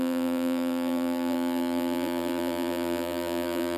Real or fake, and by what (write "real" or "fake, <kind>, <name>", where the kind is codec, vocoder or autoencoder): fake, vocoder, BigVGAN v2